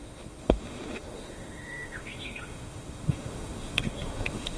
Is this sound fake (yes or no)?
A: yes